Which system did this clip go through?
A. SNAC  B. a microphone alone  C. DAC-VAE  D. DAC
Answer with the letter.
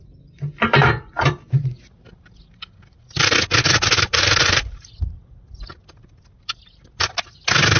B